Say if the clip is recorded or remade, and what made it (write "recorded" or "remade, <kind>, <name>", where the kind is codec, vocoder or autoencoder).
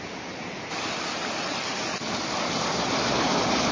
recorded